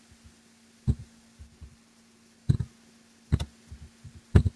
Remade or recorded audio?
recorded